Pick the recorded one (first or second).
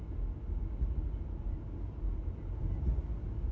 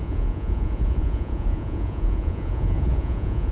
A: first